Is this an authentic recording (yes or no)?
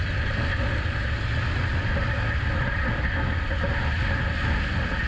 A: yes